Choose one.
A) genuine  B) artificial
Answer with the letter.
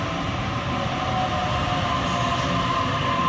A